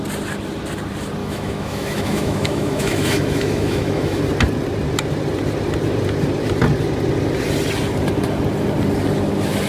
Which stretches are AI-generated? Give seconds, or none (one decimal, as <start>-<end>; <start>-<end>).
1.2-4.2